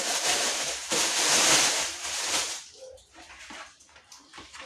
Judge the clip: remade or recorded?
remade